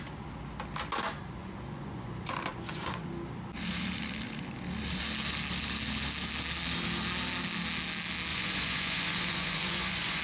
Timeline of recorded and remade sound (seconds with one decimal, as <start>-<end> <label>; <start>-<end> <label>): 0.0-1.4 recorded; 1.4-2.1 remade; 2.1-2.5 recorded; 2.5-3.1 remade; 3.1-8.3 recorded; 8.3-10.2 remade